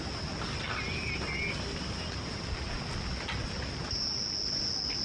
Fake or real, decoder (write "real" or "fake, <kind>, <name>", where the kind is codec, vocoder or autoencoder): real